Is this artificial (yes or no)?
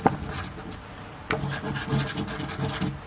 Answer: no